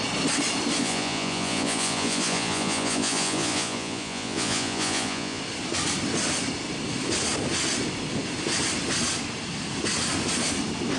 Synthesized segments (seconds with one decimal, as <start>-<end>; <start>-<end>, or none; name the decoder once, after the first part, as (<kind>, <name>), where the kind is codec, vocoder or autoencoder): 0.8-5.4 (vocoder, Vocos)

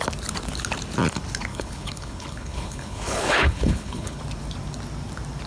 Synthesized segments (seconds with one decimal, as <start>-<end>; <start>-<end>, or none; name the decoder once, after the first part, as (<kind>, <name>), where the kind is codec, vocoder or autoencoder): 1.5-4.2 (codec, HILCodec)

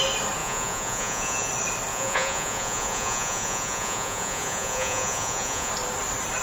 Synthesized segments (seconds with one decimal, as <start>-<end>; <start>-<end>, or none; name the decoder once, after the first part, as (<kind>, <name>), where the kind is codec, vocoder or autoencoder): 0.4-1.5 (vocoder, Vocos); 1.9-5.7

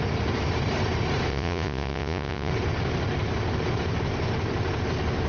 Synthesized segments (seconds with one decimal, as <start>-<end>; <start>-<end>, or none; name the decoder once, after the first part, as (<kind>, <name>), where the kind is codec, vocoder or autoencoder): 1.3-2.5 (vocoder, Vocos)